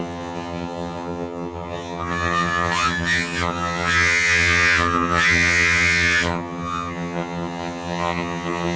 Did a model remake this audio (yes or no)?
yes